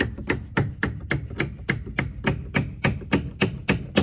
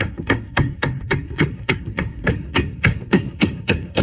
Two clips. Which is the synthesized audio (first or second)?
second